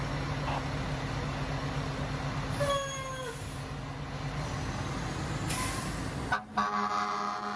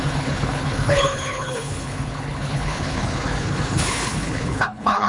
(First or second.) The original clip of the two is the first